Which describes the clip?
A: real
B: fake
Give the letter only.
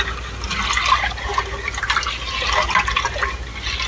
A